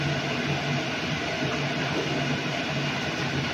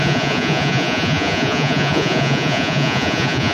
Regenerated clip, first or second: second